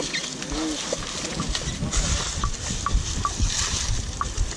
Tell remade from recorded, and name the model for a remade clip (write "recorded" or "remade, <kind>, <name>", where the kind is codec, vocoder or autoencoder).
recorded